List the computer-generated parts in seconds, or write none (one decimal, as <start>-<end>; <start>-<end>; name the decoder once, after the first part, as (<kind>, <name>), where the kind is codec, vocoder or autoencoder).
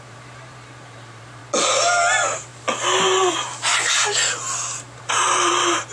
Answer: 0.0-1.4 (vocoder, BigVGAN v2); 2.1-2.5; 3.3-3.7; 5.0-5.9